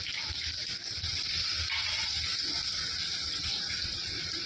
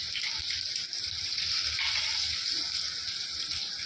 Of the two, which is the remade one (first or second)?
second